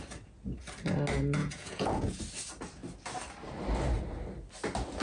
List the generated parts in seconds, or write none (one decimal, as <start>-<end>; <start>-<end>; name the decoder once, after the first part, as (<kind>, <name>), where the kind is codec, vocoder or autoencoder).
1.4-2.2 (vocoder, Vocos)